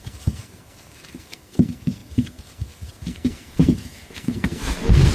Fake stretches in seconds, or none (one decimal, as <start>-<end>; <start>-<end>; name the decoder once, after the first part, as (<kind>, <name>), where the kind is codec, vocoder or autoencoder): 0.0-5.1 (codec, SNAC)